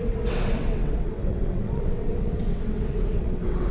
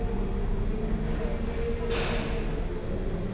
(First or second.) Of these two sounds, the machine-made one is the first